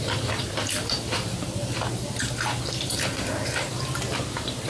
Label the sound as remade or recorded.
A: remade